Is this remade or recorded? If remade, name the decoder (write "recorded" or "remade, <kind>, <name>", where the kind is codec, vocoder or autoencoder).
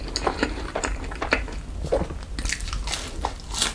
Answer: recorded